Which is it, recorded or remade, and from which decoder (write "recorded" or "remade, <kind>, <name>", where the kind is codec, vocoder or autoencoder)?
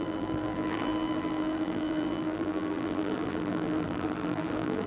remade, vocoder, BigVGAN v2